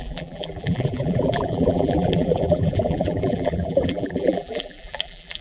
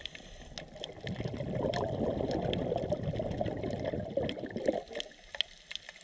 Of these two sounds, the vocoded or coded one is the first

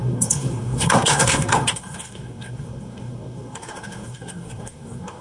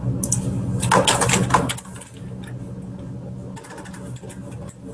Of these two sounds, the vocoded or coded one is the first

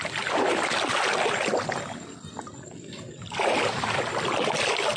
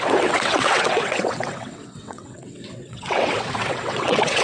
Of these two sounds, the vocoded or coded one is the second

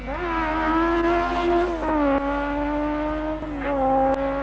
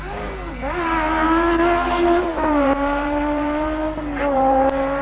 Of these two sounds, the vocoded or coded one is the second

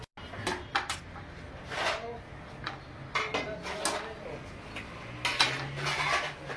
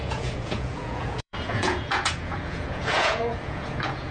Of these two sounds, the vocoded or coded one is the second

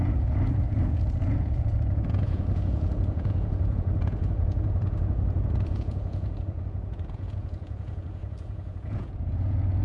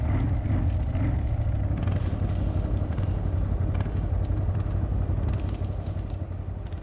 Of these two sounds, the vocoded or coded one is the first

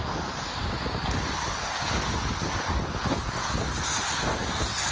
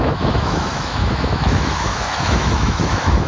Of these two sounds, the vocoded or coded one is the second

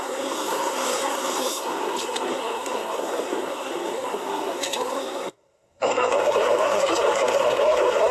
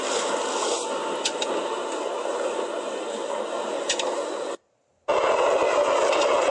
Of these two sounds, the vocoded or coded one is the first